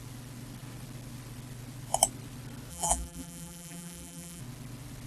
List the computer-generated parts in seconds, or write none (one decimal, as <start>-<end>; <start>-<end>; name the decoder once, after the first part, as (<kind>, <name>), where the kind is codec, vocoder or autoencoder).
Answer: 2.7-4.4 (vocoder, BigVGAN v2)

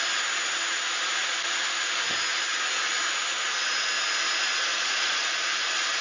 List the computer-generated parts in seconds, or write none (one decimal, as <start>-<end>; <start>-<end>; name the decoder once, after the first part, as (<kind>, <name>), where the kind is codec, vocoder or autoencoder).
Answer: 4.7-5.3 (vocoder, Vocos)

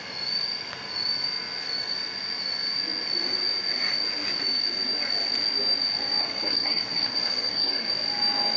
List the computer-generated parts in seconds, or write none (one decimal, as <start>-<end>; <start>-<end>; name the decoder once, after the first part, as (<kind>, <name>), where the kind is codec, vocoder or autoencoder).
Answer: 6.2-7.9 (codec, SNAC)

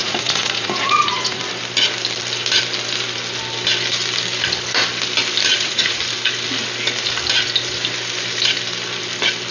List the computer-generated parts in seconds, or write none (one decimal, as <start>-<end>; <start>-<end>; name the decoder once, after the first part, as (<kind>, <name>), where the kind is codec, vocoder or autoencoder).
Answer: 0.0-1.4 (vocoder, Vocos); 5.5-6.0

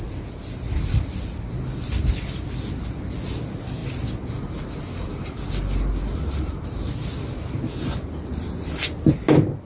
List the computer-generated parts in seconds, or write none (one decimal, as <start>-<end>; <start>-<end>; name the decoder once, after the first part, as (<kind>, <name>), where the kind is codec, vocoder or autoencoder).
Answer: none

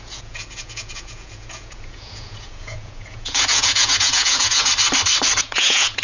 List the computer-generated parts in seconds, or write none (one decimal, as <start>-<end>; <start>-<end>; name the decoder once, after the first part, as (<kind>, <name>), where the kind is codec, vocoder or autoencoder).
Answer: 0.0-4.7 (vocoder, Vocos); 5.4-6.0

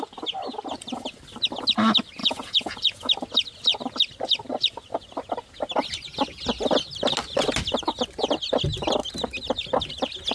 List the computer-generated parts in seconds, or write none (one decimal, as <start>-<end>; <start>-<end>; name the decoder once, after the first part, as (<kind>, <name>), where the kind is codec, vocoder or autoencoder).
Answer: 2.2-3.1 (vocoder, Vocos)

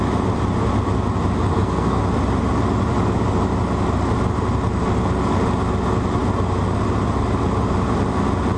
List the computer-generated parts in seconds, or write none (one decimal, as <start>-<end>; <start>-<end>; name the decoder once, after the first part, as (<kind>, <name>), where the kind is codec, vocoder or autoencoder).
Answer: 1.5-2.0 (codec, SNAC)